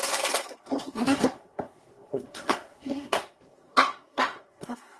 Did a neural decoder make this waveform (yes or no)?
yes